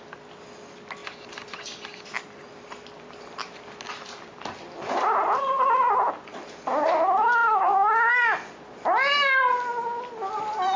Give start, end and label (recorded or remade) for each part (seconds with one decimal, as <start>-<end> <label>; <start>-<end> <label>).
0.0-10.8 recorded